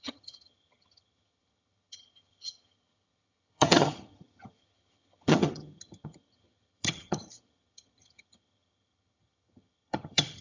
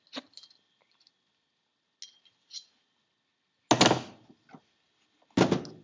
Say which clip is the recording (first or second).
second